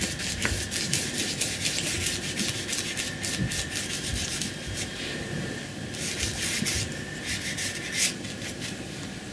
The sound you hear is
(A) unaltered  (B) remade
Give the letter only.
A